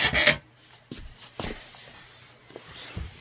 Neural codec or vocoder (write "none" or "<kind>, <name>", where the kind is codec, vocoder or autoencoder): none